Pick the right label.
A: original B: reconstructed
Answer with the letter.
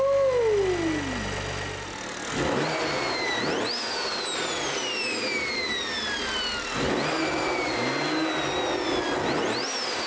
A